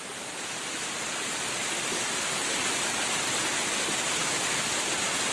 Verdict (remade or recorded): recorded